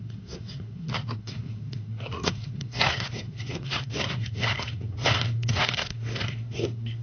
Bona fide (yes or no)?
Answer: no